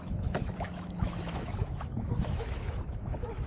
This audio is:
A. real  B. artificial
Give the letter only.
B